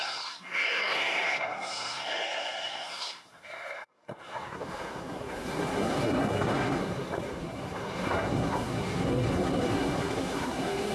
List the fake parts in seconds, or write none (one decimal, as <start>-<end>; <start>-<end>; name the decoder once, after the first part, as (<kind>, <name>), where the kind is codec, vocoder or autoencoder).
0.0-10.9 (codec, SNAC)